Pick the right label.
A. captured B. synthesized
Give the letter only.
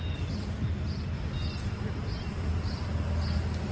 A